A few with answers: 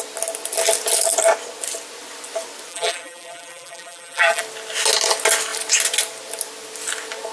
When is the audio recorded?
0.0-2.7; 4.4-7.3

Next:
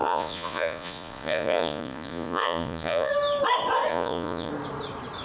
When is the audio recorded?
3.1-3.9; 4.5-5.2

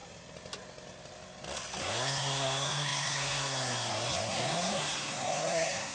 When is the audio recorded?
0.0-1.8

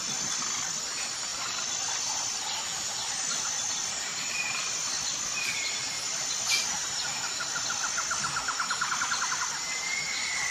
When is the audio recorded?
0.0-10.5

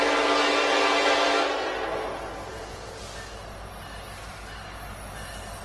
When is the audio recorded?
0.0-2.5; 3.0-5.6